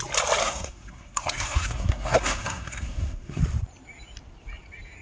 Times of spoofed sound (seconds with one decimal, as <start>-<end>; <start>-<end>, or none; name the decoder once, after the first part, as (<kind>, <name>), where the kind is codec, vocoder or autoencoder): 0.4-3.4 (codec, SNAC)